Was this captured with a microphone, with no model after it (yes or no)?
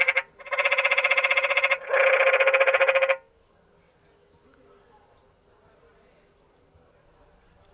yes